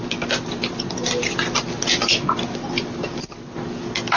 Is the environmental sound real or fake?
real